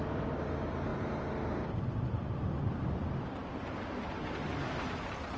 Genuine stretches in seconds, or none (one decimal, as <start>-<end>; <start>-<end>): 0.9-2.1